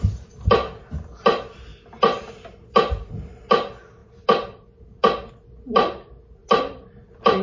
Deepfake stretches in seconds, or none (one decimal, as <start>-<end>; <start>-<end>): none